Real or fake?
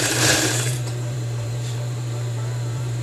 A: fake